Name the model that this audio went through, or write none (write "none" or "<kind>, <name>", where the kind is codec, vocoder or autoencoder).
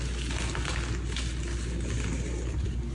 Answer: none